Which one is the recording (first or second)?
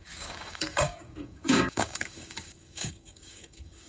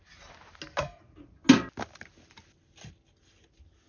second